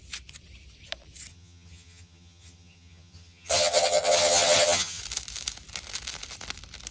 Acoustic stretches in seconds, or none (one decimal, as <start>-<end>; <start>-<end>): 0.0-1.3; 5.0-6.9